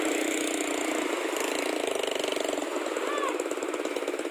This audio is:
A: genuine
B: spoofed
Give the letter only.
A